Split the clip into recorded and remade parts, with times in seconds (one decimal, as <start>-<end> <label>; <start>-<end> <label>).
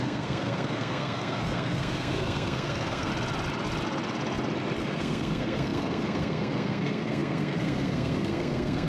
0.0-3.1 remade; 3.1-4.8 recorded; 4.8-8.9 remade